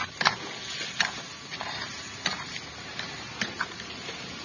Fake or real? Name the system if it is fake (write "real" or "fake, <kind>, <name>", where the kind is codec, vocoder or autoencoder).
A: real